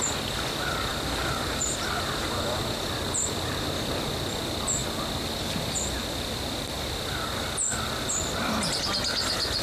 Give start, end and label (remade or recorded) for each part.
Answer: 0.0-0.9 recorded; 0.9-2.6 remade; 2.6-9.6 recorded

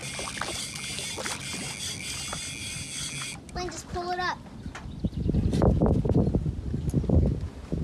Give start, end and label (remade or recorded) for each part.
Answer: 0.0-7.8 recorded

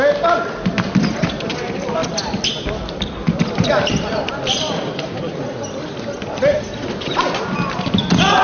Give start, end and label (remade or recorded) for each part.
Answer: 0.0-2.0 recorded; 2.0-6.6 remade; 6.6-8.4 recorded

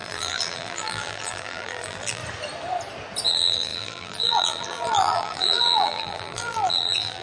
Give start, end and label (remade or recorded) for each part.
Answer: 0.0-2.2 remade; 2.2-3.3 recorded; 3.3-7.2 remade

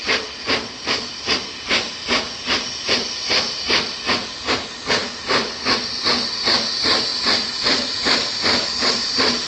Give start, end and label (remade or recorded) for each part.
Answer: 0.0-5.0 recorded; 5.0-5.6 remade; 5.6-9.5 recorded

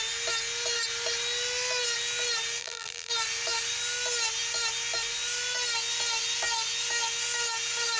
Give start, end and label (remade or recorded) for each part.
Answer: 0.0-2.6 recorded; 2.6-3.1 remade; 3.1-8.0 recorded

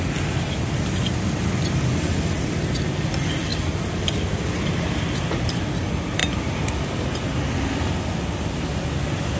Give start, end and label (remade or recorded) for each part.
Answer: 0.0-3.5 recorded; 3.5-4.0 remade; 4.0-9.4 recorded

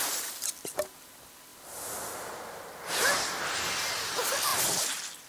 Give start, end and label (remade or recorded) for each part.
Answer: 0.0-5.3 recorded